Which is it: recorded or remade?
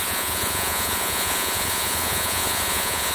remade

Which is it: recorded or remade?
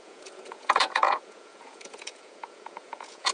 remade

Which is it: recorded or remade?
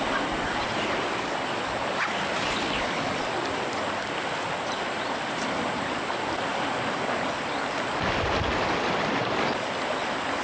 recorded